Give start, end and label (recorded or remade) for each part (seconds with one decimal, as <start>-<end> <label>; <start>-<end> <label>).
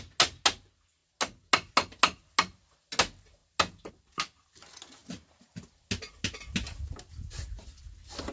0.0-8.3 recorded